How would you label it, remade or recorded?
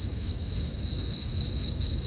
remade